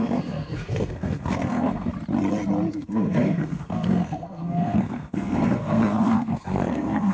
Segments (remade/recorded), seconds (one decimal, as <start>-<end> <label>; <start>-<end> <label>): 0.0-1.9 remade; 1.9-2.7 recorded; 2.7-7.1 remade